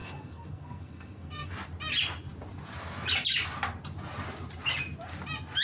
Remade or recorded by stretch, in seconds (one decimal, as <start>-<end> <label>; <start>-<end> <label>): 0.0-1.5 remade; 1.5-5.6 recorded